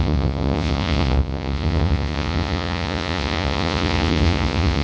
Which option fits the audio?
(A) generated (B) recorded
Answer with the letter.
A